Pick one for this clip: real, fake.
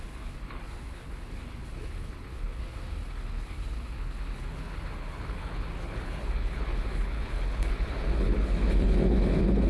fake